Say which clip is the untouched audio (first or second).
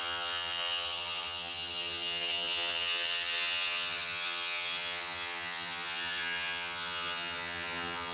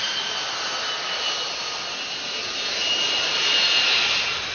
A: second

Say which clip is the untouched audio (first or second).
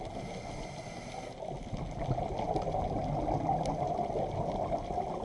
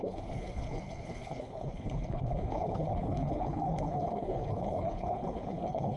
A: first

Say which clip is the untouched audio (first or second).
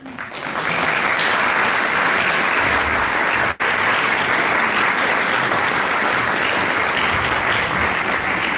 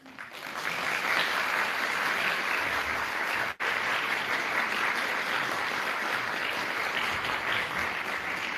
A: first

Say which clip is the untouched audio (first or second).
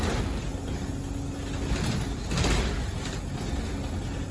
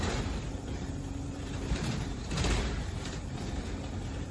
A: first